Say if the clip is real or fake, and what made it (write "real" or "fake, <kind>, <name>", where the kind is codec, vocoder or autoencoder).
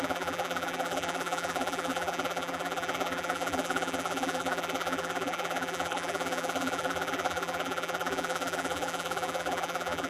fake, vocoder, BigVGAN v2